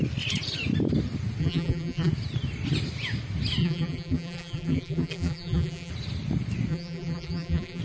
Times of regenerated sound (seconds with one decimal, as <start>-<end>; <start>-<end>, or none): 1.4-2.1; 3.6-5.9; 6.7-7.8